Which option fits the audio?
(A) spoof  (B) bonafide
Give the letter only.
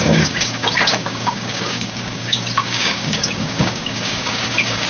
A